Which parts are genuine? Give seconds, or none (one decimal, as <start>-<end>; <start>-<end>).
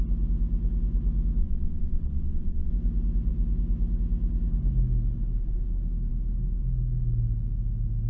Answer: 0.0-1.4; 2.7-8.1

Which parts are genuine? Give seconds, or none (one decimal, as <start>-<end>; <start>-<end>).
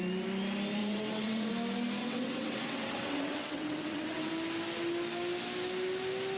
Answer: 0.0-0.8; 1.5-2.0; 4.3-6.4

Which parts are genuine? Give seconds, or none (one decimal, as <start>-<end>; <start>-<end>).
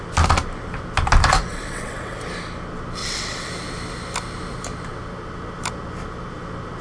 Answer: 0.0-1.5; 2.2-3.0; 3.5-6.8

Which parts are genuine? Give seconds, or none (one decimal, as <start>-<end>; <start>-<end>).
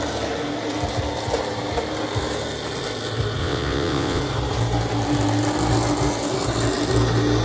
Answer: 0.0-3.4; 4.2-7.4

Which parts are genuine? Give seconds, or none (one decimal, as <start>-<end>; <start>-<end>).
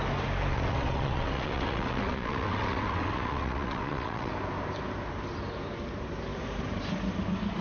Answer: 0.0-0.5; 4.3-7.6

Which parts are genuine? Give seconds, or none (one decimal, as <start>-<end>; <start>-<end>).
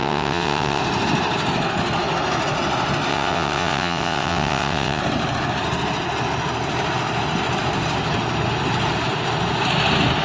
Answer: 0.8-3.1; 5.0-10.2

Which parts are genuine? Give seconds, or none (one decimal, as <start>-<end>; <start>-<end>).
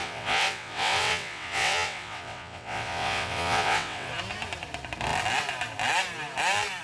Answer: 4.1-6.8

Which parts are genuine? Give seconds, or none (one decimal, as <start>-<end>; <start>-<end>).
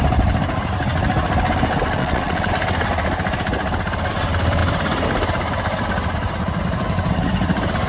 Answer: 0.0-2.0; 2.5-7.9